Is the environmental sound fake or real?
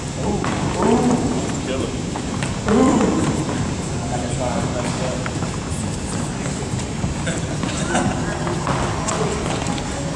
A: real